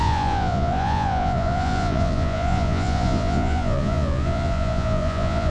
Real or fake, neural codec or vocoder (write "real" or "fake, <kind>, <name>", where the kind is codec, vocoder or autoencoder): fake, vocoder, Vocos